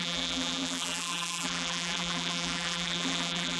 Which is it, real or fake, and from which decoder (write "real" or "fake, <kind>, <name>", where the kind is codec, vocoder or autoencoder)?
fake, vocoder, BigVGAN v2